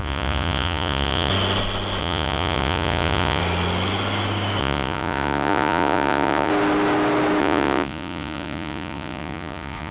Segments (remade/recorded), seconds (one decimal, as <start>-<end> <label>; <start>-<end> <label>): 0.0-1.3 remade; 1.3-2.0 recorded; 2.0-3.4 remade; 3.4-4.6 recorded; 4.6-6.5 remade; 6.5-7.4 recorded; 7.4-9.9 remade